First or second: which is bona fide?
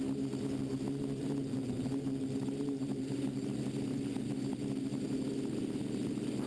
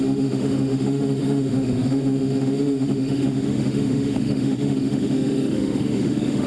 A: first